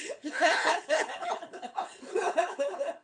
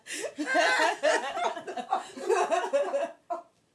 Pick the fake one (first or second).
first